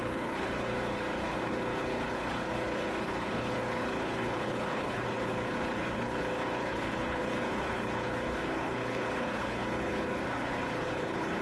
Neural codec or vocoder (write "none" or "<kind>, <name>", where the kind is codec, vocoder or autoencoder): codec, HILCodec